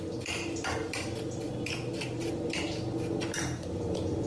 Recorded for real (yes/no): yes